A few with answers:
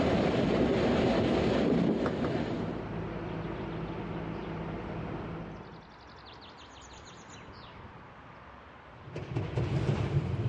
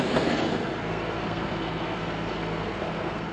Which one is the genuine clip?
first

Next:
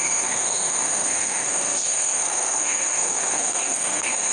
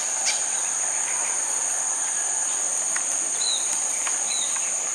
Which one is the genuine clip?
second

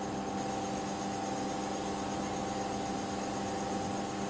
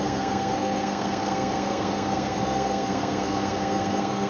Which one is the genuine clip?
first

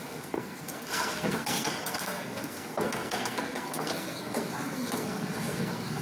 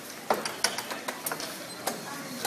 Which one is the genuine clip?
second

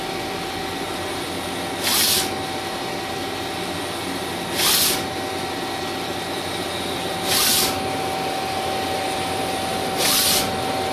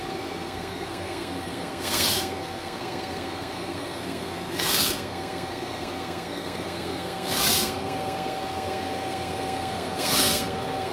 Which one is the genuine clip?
first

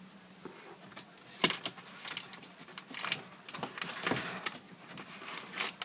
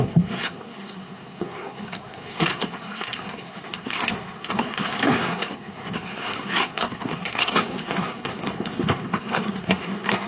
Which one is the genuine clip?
first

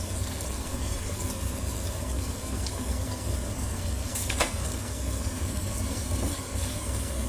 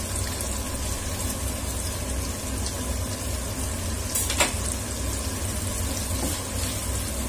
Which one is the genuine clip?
second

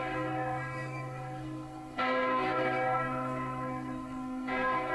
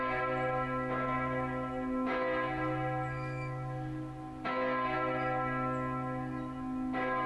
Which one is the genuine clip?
second